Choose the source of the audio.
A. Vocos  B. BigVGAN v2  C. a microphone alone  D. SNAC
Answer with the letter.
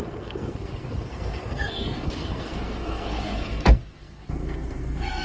D